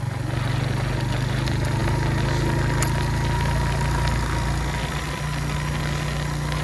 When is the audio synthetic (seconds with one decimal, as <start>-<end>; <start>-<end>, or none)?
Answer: none